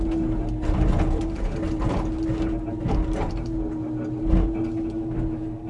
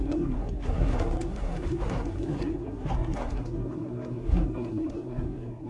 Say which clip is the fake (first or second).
second